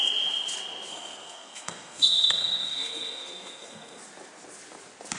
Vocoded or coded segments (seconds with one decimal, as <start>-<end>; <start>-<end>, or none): 0.9-4.0